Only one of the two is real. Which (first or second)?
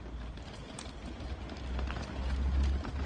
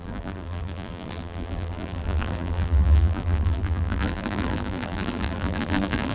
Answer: first